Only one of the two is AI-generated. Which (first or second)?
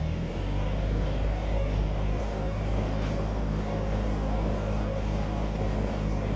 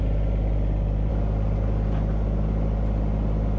first